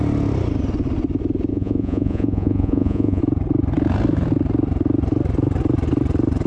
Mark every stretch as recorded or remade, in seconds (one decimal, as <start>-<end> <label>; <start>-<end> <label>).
0.0-1.5 recorded; 1.5-3.2 remade; 3.2-6.5 recorded